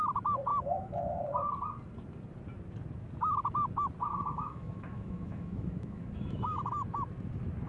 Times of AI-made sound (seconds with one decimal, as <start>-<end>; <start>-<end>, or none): 0.5-1.2; 4.1-6.7